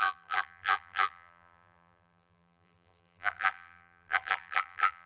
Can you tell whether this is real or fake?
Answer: fake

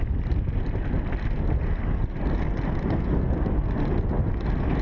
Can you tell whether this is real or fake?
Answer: real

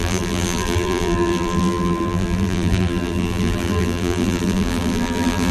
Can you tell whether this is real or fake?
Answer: fake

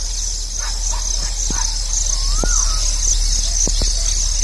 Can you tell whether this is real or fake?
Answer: real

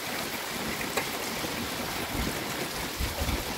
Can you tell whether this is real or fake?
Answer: real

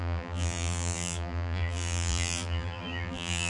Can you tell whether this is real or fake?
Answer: fake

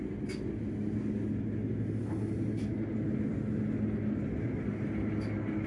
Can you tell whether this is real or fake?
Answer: real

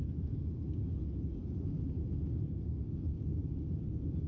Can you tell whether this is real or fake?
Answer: real